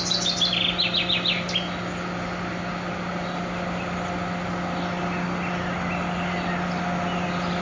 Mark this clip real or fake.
real